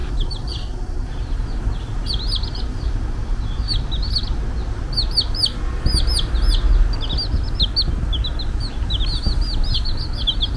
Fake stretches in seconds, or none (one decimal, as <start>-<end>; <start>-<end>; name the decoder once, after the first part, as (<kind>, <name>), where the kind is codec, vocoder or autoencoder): 0.0-1.6 (vocoder, BigVGAN v2); 2.7-3.4